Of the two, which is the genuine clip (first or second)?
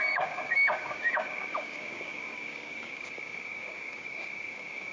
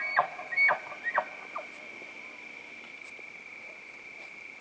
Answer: second